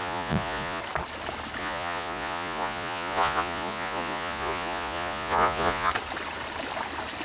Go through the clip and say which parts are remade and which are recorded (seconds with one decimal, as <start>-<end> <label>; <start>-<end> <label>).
0.0-0.8 remade; 0.8-1.6 recorded; 1.6-5.9 remade; 5.9-7.2 recorded